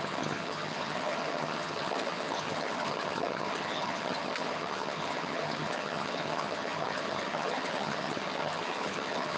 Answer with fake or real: fake